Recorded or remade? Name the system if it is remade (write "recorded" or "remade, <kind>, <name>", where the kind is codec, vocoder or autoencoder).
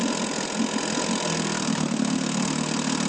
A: recorded